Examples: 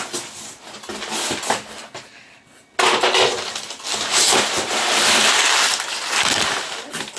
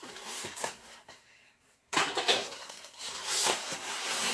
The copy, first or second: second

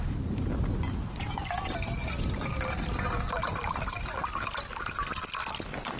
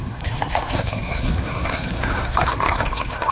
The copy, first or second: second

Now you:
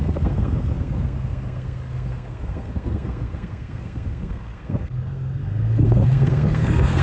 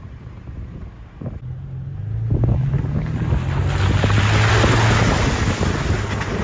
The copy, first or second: first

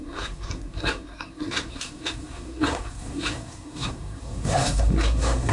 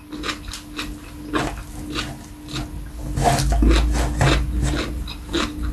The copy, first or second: first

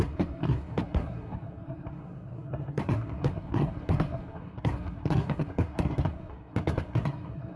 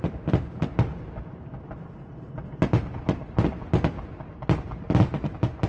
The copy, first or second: first